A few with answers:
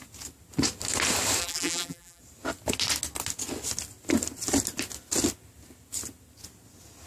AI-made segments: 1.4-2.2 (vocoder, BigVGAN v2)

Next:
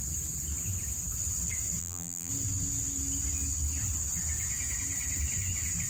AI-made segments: 1.8-2.3 (vocoder, BigVGAN v2)

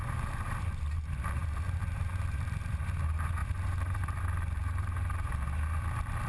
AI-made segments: 0.0-5.3 (vocoder, BigVGAN v2)

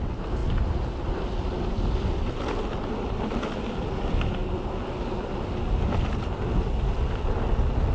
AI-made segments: none

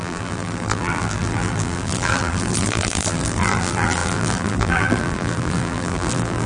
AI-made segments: 0.0-6.5 (vocoder, BigVGAN v2)

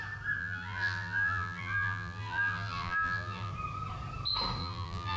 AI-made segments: 0.4-3.5 (vocoder, BigVGAN v2); 4.6-5.2